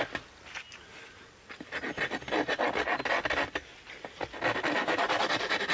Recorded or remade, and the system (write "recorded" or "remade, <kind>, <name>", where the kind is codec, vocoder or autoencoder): recorded